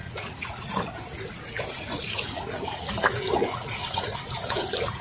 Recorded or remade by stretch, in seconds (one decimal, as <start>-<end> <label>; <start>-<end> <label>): 0.0-0.7 remade; 0.7-1.7 recorded; 1.7-5.0 remade